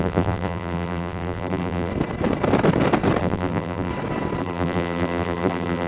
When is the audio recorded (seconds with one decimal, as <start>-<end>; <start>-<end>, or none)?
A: 1.9-3.2; 3.9-4.4